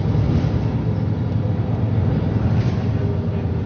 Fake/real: real